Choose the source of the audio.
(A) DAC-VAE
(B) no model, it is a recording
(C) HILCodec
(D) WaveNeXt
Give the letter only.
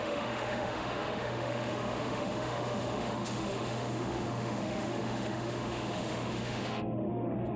A